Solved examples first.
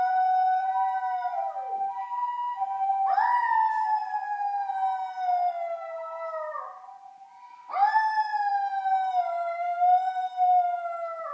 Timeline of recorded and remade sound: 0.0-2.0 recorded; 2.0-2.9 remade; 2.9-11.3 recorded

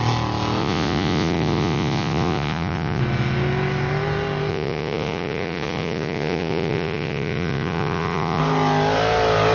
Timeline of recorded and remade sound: 0.0-0.6 recorded; 0.6-3.0 remade; 3.0-4.5 recorded; 4.5-8.4 remade; 8.4-9.5 recorded

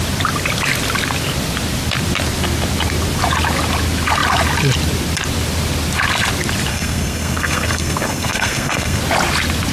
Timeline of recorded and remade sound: 0.0-6.7 recorded; 6.7-9.0 remade; 9.0-9.7 recorded

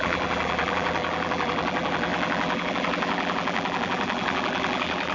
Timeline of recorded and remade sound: 0.0-5.1 remade

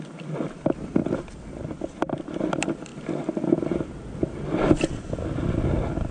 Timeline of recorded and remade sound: 0.0-6.1 recorded

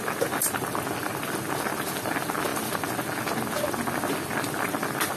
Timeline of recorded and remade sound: 0.0-5.2 recorded